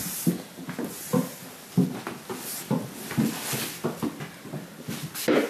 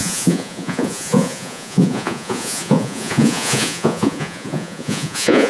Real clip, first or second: first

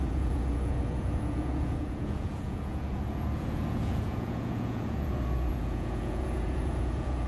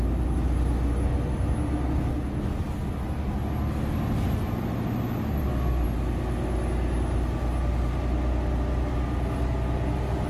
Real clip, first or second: second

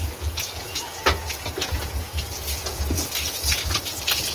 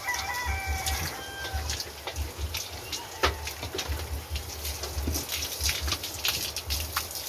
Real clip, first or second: second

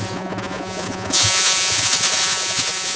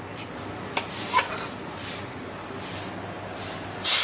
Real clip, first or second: second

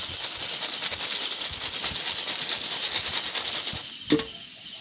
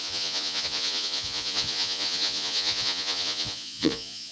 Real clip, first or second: first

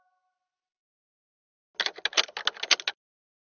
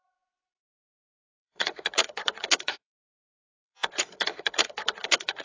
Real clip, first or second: first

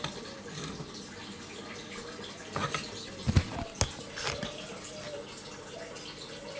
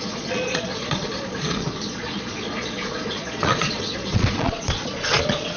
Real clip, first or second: first